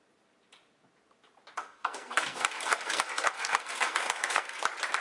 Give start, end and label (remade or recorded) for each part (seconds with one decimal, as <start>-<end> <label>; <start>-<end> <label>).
0.0-1.6 recorded; 1.6-4.6 remade; 4.6-5.0 recorded